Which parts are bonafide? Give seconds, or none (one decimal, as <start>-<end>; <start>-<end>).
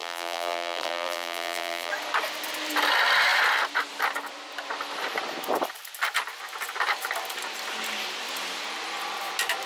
1.9-9.7